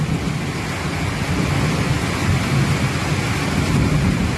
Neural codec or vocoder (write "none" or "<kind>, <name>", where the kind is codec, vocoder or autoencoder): none